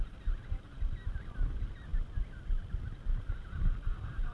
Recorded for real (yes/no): yes